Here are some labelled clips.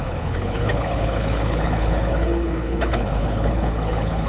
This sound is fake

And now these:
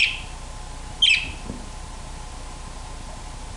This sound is real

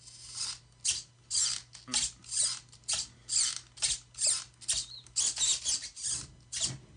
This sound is real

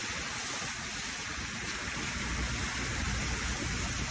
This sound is real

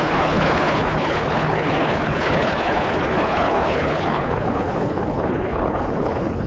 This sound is fake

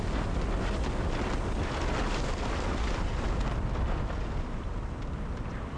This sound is real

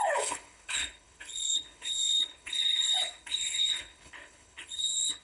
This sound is fake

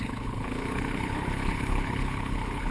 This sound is fake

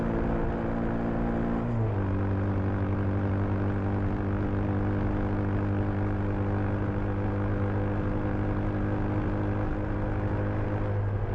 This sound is real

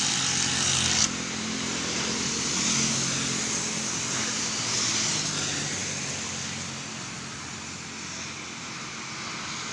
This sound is real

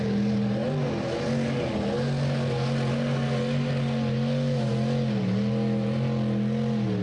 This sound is real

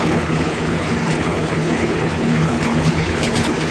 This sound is fake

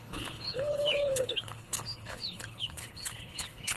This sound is fake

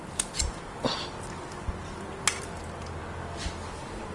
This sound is real